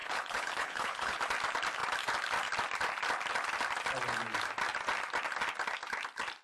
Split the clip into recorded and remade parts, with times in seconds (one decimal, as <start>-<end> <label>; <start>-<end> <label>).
0.0-1.2 remade; 1.2-6.4 recorded